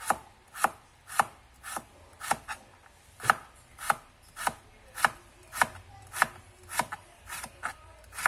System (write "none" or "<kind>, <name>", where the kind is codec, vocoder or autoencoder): none